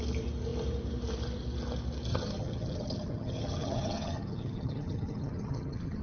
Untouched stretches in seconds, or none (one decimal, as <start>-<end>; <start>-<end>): 0.0-2.1